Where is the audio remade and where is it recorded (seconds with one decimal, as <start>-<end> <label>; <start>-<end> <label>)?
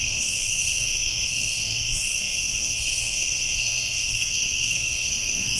0.0-5.6 remade